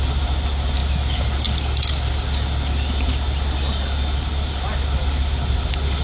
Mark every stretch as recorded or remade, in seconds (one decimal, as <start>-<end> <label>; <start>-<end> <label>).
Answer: 0.0-6.0 recorded